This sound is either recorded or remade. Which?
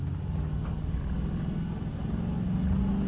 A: recorded